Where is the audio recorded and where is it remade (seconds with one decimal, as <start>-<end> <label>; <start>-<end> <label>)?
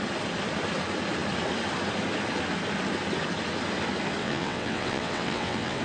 0.0-4.2 recorded; 4.2-5.8 remade